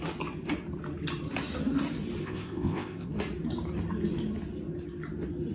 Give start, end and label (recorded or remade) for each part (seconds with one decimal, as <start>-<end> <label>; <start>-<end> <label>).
0.0-2.2 recorded; 2.2-3.1 remade; 3.1-5.5 recorded